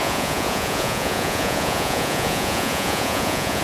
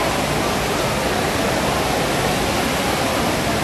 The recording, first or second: second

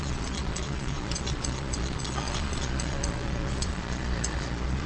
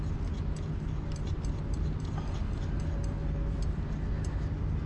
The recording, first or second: second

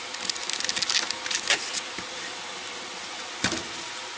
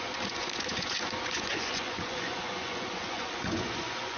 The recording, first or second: first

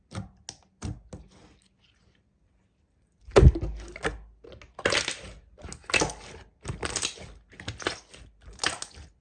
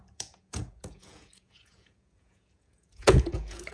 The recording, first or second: first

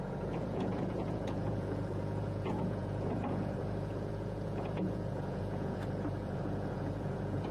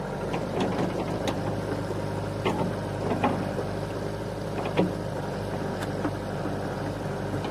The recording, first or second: second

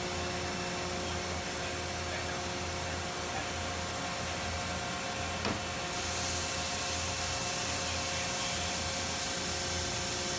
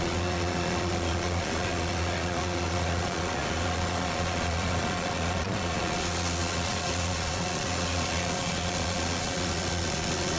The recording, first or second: first